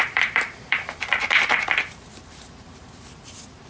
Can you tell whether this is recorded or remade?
remade